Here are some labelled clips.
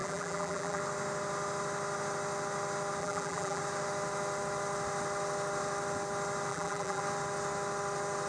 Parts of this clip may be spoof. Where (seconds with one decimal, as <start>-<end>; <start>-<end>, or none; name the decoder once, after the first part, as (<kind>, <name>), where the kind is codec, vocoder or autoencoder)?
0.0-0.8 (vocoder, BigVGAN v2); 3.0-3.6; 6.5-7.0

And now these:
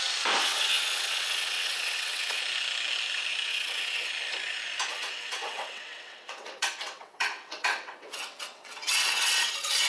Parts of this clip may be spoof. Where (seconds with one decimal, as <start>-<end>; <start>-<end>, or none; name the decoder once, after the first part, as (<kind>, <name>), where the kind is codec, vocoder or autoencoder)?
0.4-2.4 (vocoder, WaveNeXt); 3.5-4.1; 4.9-9.9

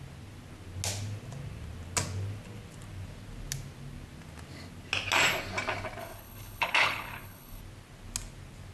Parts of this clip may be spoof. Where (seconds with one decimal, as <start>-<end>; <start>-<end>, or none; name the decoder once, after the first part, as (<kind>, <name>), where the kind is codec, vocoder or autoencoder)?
6.0-7.6 (codec, HILCodec)

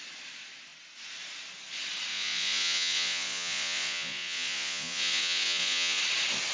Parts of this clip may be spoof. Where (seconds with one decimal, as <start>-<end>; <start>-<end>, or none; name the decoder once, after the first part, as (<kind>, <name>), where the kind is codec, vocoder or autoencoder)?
2.1-6.0 (vocoder, Vocos)

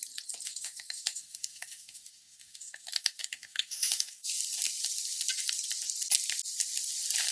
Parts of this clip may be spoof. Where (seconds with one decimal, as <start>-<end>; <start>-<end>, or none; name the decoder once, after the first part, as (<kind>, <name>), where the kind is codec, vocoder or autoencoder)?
0.4-4.4 (autoencoder, DAC-VAE)